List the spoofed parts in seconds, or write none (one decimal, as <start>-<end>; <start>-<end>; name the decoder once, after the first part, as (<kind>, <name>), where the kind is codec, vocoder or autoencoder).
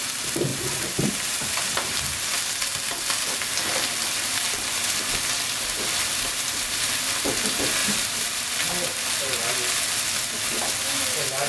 0.5-2.0 (vocoder, BigVGAN v2); 7.8-8.4